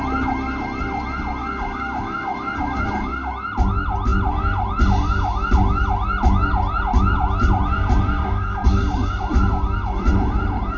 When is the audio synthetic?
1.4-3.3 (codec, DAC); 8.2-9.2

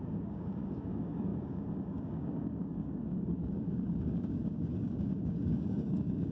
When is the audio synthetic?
0.0-6.3 (codec, DAC)

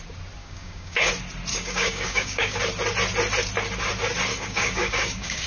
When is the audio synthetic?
0.4-1.1 (codec, DAC); 1.5-2.6; 4.3-5.5

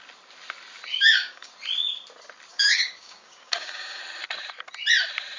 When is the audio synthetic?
0.9-1.5 (codec, DAC); 2.5-4.0

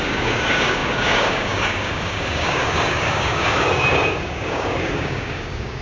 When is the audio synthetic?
0.0-5.8 (codec, DAC)

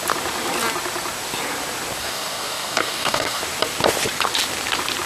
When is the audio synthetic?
2.0-3.4 (codec, DAC)

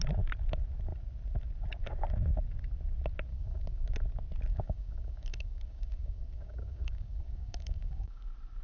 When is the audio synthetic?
3.3-3.8 (codec, DAC); 4.5-8.2

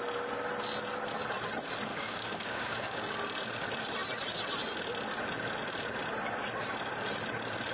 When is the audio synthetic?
1.9-3.0 (codec, DAC)